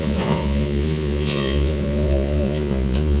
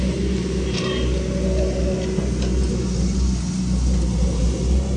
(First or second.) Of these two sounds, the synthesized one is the first